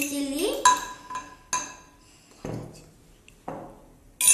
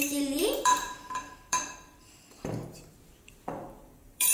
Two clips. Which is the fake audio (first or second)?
second